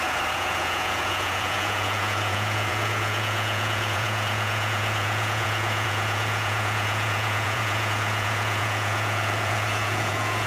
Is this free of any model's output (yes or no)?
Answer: no